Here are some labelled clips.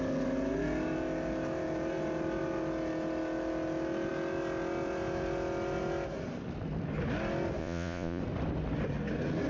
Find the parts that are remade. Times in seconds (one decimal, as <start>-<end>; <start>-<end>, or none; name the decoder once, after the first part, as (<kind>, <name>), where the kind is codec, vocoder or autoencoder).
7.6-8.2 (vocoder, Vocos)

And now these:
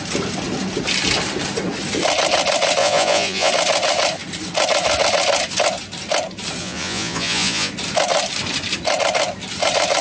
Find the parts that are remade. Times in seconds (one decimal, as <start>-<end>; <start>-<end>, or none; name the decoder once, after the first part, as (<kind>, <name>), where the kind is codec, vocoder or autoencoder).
2.8-3.5 (vocoder, Vocos); 6.6-7.7

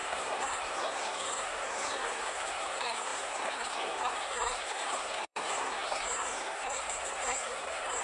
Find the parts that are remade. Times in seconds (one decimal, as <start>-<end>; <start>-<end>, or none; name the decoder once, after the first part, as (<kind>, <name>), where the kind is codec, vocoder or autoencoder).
0.0-8.0 (codec, SNAC)

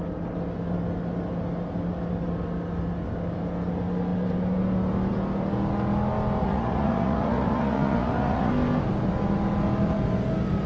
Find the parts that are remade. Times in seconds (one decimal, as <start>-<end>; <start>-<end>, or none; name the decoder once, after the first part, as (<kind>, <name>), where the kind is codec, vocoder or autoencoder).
6.4-8.5 (vocoder, Vocos)

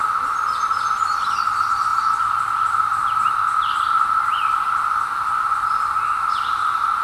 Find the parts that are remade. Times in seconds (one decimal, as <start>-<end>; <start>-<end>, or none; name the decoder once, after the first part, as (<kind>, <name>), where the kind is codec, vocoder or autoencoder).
none

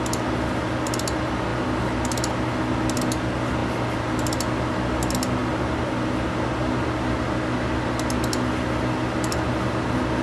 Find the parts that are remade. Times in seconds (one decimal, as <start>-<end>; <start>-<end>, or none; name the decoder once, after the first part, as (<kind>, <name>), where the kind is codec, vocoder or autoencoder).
none